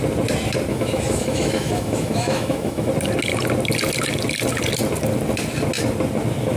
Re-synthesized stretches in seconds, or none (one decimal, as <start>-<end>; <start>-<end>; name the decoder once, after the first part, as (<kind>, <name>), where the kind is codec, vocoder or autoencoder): 0.7-2.9 (autoencoder, DAC-VAE)